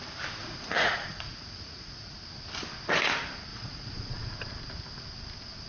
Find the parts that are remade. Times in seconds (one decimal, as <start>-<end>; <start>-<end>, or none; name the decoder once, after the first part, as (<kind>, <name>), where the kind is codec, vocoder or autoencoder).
0.4-2.1 (vocoder, Vocos); 3.5-4.3